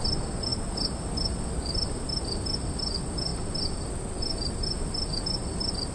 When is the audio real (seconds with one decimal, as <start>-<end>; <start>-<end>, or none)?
0.0-5.9